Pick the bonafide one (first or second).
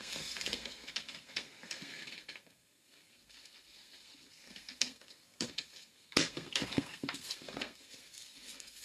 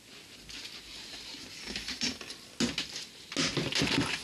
second